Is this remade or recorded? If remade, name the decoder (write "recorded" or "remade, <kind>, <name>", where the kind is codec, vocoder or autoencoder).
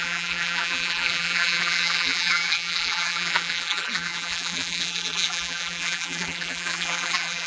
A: remade, vocoder, BigVGAN v2